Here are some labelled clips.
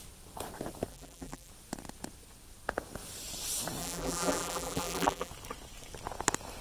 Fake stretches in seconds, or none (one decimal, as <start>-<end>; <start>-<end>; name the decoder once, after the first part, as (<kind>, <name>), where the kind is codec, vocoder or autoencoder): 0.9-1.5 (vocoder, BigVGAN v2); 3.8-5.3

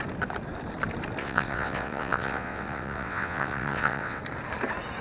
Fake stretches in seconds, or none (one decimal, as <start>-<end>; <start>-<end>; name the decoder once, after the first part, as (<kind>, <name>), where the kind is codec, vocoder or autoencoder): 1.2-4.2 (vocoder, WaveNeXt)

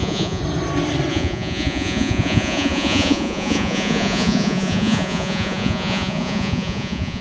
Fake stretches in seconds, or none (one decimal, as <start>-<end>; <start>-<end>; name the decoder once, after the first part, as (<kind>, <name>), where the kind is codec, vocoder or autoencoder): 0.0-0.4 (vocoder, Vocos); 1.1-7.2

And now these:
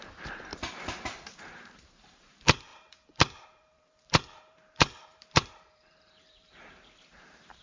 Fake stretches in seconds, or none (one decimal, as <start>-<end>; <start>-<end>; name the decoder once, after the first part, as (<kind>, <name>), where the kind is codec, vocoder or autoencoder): 0.0-0.5 (vocoder, BigVGAN v2); 1.5-7.6

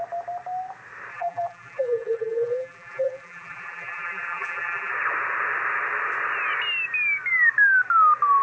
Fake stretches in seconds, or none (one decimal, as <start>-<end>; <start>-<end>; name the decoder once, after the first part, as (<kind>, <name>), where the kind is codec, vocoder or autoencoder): 1.1-4.9 (vocoder, BigVGAN v2)

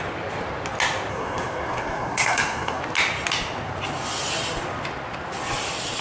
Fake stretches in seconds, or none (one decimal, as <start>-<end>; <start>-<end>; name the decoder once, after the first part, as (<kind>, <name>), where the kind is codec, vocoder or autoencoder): 1.1-2.8 (codec, SNAC)